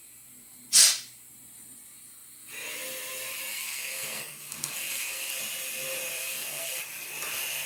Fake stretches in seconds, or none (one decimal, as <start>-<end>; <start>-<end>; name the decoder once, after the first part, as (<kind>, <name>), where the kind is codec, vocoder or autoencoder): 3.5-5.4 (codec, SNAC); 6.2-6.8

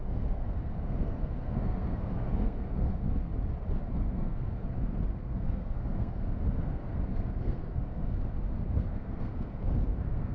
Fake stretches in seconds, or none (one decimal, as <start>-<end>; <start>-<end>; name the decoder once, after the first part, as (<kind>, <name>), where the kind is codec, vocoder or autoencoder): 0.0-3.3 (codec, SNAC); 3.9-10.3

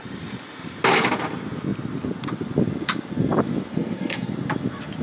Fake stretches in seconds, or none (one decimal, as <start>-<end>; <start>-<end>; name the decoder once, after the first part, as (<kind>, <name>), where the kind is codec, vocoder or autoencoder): 3.7-4.3 (codec, SNAC)

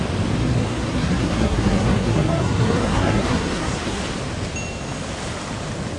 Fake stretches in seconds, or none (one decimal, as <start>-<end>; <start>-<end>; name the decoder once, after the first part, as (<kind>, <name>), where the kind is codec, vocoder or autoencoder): 0.4-4.0 (codec, SNAC)

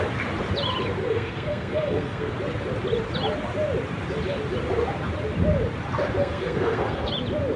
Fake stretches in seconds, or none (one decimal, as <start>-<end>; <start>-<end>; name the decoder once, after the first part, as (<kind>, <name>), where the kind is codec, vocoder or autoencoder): 1.0-2.3 (codec, SNAC); 6.2-7.1

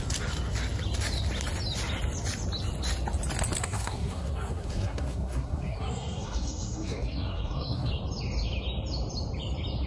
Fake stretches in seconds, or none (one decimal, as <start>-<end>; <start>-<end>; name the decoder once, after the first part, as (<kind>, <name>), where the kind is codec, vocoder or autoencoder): 3.6-7.9 (codec, SNAC)